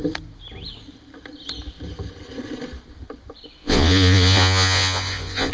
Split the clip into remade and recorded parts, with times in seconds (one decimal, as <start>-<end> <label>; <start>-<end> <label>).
0.0-3.6 recorded; 3.6-5.5 remade